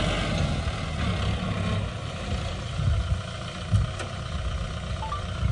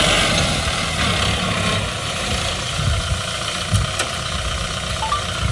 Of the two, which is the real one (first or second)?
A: first